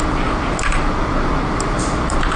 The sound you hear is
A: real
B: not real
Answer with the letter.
A